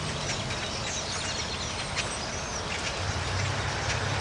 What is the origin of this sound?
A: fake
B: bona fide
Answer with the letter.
B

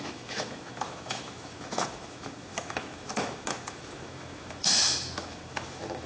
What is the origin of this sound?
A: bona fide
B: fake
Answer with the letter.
B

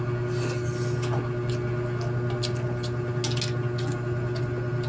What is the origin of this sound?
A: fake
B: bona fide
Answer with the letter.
B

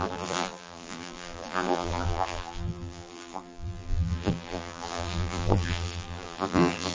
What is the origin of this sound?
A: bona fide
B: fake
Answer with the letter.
B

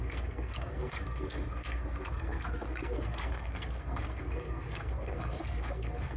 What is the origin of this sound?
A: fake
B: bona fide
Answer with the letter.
A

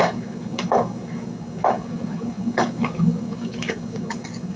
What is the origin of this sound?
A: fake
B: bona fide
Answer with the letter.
A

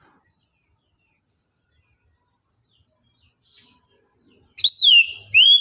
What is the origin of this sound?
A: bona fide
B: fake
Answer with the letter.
A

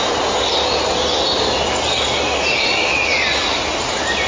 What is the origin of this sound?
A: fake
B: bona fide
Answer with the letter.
B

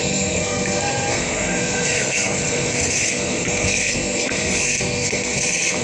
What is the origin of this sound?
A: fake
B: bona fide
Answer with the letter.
A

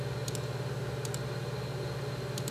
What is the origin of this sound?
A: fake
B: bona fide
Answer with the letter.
B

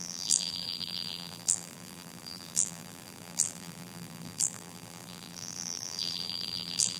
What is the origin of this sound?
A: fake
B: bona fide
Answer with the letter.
A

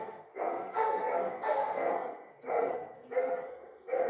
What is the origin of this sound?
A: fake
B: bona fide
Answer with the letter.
A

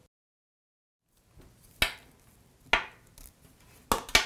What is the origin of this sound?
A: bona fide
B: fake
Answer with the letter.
A